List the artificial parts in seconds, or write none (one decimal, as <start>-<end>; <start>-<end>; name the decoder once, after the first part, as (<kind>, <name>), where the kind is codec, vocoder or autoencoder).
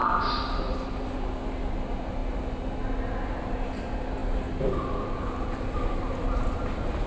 none